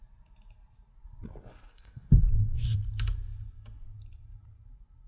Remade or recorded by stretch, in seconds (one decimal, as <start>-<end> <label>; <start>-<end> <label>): 0.0-1.7 recorded; 1.7-2.8 remade; 2.8-5.1 recorded